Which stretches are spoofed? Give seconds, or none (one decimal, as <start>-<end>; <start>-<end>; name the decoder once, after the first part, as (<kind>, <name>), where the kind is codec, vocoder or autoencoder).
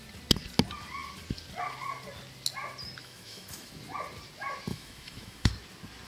3.0-3.7 (autoencoder, DAC-VAE); 4.7-5.5